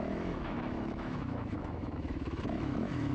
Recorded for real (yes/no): no